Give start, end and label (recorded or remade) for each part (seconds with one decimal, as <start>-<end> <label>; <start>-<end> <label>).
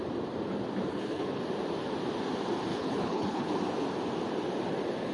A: 0.0-0.9 recorded; 0.9-1.4 remade; 1.4-2.7 recorded; 2.7-3.5 remade; 3.5-5.1 recorded